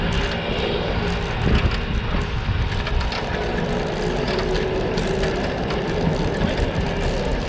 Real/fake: real